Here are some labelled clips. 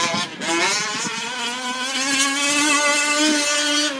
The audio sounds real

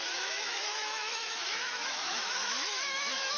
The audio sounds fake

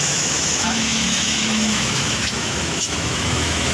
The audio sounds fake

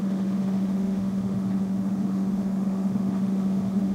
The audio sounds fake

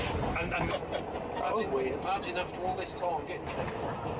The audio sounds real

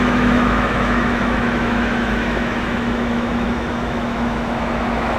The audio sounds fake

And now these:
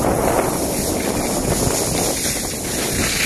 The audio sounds real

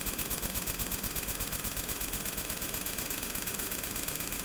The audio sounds fake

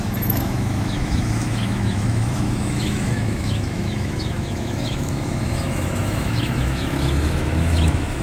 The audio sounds fake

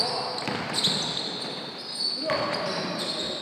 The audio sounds real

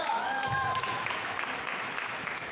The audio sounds fake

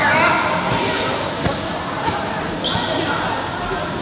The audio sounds real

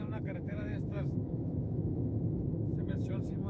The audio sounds fake